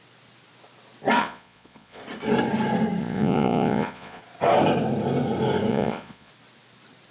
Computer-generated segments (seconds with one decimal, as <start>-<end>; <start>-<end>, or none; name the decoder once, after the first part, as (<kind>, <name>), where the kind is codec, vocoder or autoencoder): 1.2-2.0 (vocoder, Vocos); 3.0-4.2; 5.7-6.3